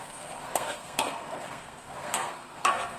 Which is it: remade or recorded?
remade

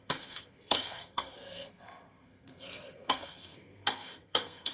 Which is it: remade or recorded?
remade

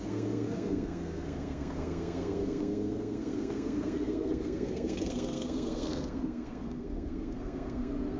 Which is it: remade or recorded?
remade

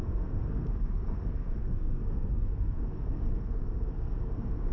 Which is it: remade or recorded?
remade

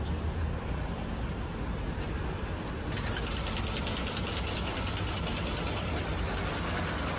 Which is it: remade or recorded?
recorded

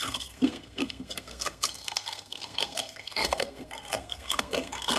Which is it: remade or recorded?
remade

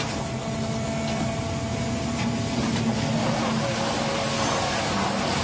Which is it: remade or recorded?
recorded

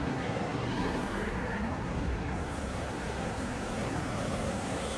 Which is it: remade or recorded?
remade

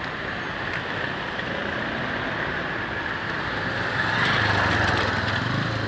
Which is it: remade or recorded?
recorded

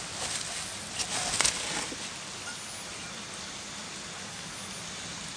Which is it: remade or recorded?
recorded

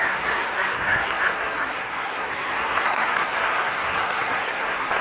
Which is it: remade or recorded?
remade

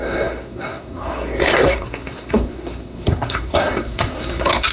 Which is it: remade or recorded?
remade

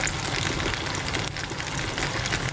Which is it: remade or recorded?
recorded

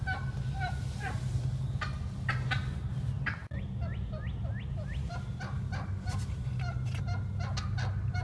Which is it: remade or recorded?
recorded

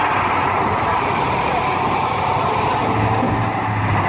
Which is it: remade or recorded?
recorded